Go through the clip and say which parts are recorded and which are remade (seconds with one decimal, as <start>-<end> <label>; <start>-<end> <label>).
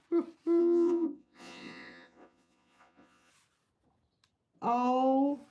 0.0-0.6 recorded; 0.6-3.3 remade; 3.3-5.5 recorded